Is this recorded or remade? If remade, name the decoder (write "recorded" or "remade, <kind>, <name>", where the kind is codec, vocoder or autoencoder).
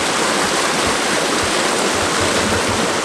recorded